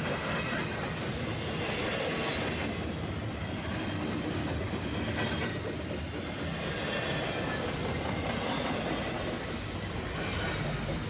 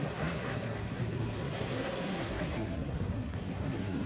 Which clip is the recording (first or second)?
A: first